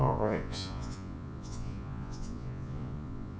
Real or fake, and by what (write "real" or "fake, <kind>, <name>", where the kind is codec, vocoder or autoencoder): fake, vocoder, Vocos